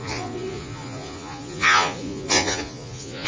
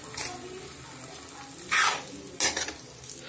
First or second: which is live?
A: second